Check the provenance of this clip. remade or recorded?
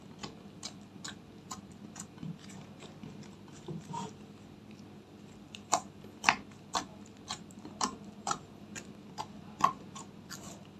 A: recorded